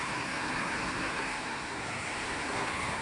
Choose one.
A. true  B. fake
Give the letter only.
B